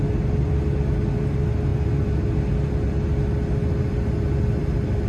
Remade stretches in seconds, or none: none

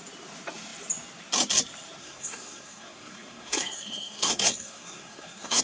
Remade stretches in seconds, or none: 2.0-5.6